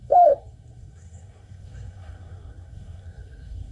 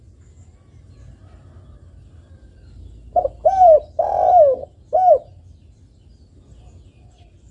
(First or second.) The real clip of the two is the second